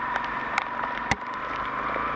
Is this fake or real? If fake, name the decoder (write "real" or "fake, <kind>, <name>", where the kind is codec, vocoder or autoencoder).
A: real